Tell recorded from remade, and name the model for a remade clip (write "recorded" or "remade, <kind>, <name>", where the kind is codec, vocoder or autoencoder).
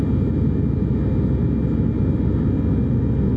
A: recorded